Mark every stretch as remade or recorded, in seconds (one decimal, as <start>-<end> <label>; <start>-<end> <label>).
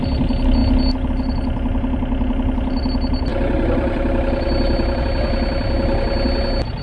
0.0-3.3 recorded; 3.3-5.0 remade; 5.0-6.8 recorded